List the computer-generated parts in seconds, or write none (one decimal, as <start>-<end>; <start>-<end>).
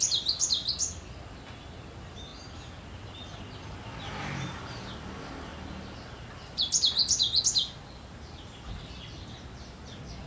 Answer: none